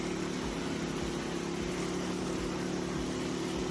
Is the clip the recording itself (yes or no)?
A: yes